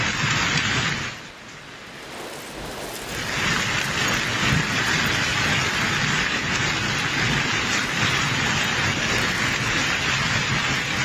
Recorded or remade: recorded